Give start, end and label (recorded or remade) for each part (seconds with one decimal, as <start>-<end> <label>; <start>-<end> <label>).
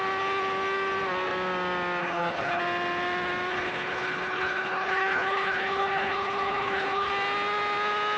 0.0-2.0 recorded; 2.0-2.6 remade; 2.6-3.5 recorded; 3.5-7.1 remade; 7.1-8.2 recorded